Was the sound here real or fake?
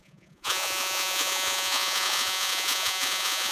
fake